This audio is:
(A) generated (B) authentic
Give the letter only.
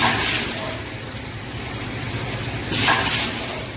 B